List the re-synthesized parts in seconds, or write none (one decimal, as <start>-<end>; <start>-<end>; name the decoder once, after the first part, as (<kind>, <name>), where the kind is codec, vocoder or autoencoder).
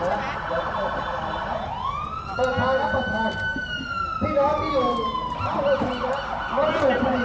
none